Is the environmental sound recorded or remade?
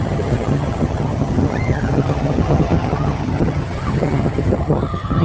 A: remade